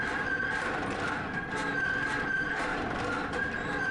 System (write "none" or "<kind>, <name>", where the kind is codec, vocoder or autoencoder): none